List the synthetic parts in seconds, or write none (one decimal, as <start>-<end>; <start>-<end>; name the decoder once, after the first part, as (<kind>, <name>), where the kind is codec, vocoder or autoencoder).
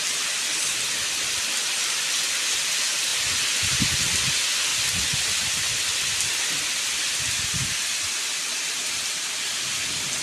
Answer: none